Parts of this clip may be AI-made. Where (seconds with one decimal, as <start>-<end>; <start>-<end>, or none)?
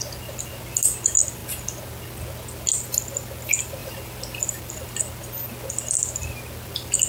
none